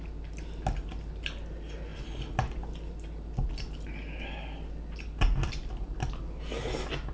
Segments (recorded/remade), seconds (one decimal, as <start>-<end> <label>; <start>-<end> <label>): 0.0-7.1 recorded